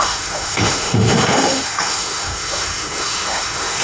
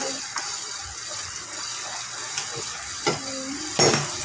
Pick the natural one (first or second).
second